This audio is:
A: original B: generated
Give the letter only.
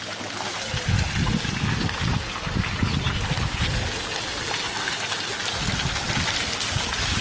A